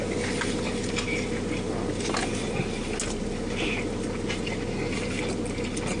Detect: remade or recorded recorded